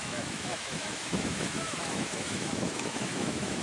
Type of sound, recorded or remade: remade